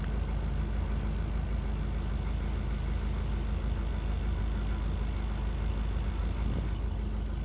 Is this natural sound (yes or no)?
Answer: yes